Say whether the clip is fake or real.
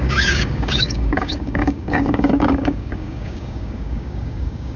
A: fake